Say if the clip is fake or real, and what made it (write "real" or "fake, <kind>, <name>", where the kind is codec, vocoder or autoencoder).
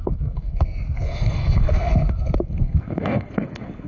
fake, codec, SNAC